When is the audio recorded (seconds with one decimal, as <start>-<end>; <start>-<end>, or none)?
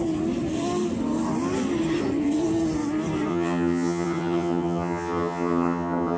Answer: 0.0-3.3